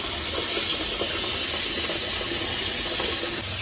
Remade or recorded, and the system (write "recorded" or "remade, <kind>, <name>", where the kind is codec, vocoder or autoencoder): recorded